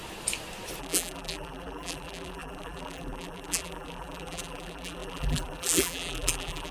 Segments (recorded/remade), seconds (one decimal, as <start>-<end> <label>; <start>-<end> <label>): 0.0-0.8 recorded; 0.8-6.7 remade